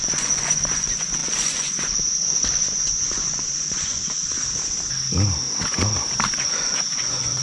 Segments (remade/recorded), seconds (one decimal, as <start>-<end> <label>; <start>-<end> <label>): 0.0-4.0 remade; 4.0-6.4 recorded; 6.4-7.4 remade